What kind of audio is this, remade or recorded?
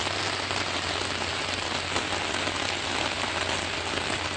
recorded